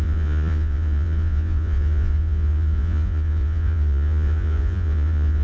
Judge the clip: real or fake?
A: fake